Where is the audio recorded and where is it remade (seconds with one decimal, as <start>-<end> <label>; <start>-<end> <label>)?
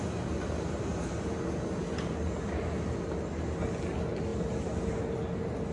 0.0-5.7 recorded